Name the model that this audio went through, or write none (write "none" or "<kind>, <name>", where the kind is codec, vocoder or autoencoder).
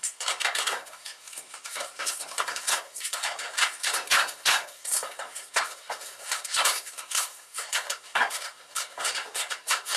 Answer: codec, SNAC